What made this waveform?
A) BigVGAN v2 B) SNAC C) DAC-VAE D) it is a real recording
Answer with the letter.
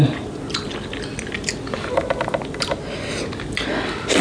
D